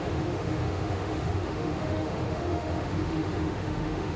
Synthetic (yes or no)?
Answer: yes